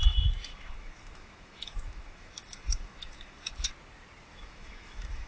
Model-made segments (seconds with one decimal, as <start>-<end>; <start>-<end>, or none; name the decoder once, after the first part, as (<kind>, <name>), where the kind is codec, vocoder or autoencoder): 0.5-3.7 (autoencoder, DAC-VAE); 4.3-5.3